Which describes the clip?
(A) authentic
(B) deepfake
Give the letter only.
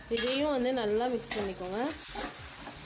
A